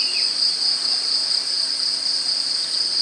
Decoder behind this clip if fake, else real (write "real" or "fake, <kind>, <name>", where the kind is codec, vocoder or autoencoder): real